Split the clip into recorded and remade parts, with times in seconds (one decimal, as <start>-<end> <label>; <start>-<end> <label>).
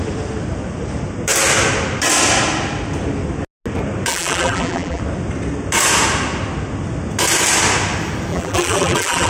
0.0-4.1 recorded; 4.1-5.0 remade; 5.0-8.3 recorded; 8.3-9.3 remade